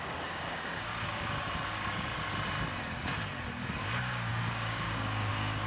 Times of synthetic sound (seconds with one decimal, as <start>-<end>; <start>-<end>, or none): 0.0-0.9; 1.7-2.1; 3.9-5.7